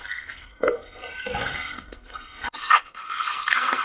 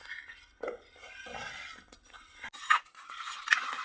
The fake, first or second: first